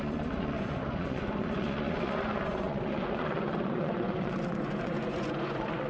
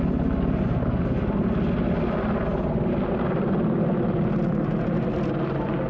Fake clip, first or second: first